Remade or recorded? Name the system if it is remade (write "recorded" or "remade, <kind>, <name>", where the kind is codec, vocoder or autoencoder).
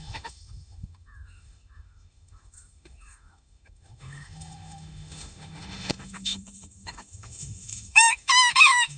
remade, autoencoder, DAC-VAE